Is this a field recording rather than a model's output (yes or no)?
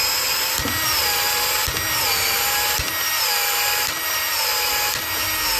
yes